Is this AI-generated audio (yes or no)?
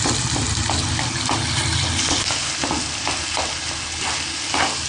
no